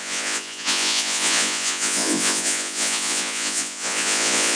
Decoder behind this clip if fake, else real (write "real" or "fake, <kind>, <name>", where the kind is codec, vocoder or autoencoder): fake, vocoder, Vocos